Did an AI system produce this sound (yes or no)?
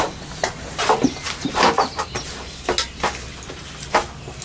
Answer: no